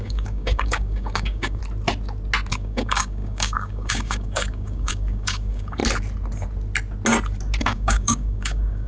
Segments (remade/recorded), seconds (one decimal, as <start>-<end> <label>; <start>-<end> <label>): 0.0-1.6 remade; 1.6-2.5 recorded; 2.5-5.8 remade; 5.8-7.6 recorded; 7.6-8.9 remade